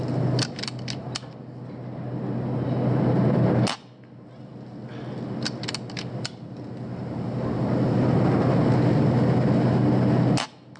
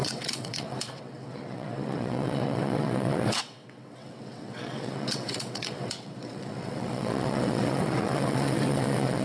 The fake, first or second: second